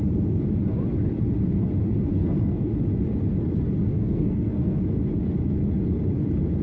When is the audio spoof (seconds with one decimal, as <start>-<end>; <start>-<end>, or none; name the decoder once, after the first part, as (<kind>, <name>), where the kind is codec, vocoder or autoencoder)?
2.1-2.7 (codec, SNAC); 3.8-4.8